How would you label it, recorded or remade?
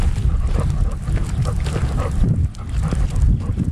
recorded